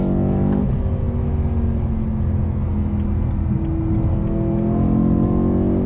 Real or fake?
real